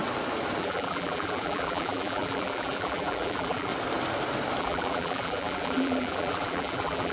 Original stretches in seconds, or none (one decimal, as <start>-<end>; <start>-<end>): 0.0-0.6; 3.7-4.6

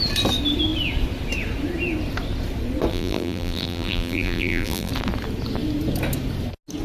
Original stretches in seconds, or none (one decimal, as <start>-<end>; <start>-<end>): 0.0-2.9; 4.9-6.8

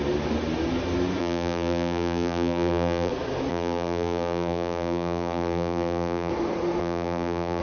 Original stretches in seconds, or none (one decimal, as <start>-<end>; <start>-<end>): 0.0-1.2; 3.1-3.5; 6.3-6.8